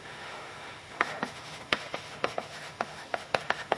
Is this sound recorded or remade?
remade